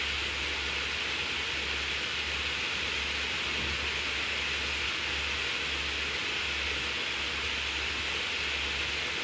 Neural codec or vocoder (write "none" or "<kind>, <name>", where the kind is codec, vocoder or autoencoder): none